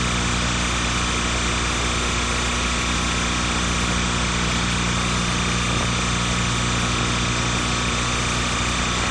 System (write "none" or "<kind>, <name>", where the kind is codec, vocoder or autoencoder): none